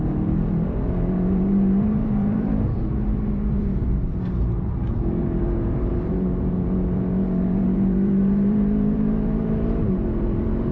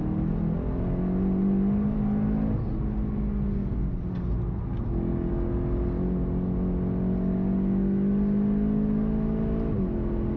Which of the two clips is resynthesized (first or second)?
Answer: first